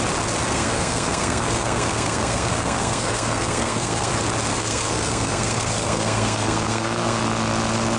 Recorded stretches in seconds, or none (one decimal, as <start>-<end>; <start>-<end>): 0.0-0.4; 4.1-4.5; 7.2-8.0